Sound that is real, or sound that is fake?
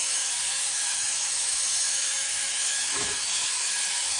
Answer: fake